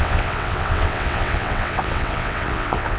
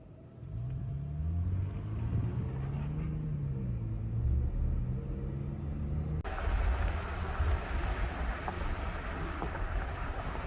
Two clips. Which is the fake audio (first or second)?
first